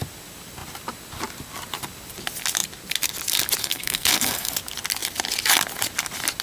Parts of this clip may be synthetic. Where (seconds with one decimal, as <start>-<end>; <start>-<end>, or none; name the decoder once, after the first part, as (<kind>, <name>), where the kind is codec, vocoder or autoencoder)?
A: 3.6-4.5 (codec, SNAC)